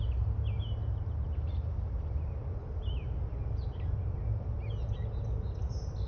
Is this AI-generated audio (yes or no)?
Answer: no